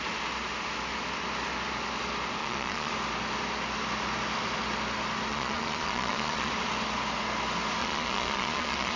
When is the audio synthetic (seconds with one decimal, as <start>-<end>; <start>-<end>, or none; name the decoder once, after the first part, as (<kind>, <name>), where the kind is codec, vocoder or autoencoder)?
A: 2.4-2.9 (vocoder, Vocos); 5.3-6.5; 7.8-9.0